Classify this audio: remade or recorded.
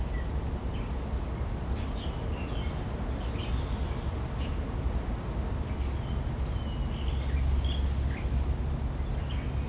recorded